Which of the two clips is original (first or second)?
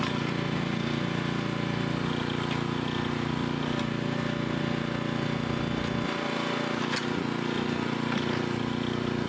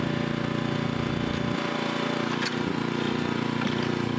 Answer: first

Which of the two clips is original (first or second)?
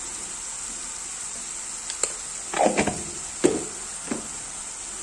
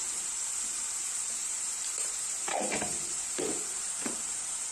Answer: first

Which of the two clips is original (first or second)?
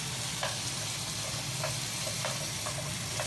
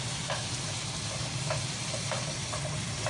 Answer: first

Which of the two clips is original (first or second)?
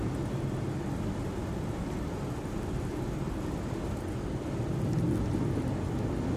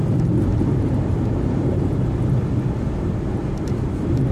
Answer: first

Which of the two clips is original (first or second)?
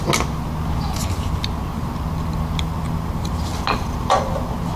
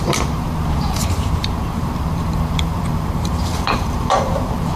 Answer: first